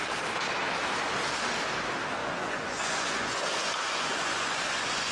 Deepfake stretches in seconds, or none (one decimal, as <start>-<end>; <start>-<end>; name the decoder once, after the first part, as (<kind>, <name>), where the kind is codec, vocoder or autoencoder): 2.2-5.1 (vocoder, Vocos)